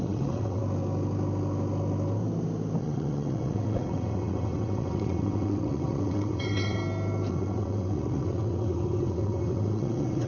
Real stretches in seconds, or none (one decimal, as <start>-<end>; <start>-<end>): 0.6-2.8; 6.8-7.3